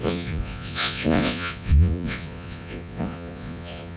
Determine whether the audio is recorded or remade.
remade